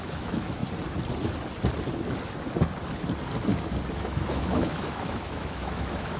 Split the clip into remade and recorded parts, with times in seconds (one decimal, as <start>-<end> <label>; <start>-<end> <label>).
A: 0.0-0.6 remade; 0.6-3.9 recorded; 3.9-6.2 remade